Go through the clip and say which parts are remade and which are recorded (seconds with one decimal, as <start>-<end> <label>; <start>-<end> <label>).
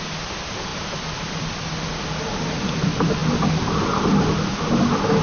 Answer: 0.0-5.2 recorded